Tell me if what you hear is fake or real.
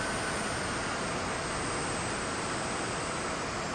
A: real